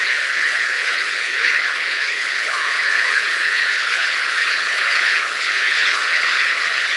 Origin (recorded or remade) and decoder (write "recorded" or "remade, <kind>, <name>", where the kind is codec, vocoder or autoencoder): remade, codec, HILCodec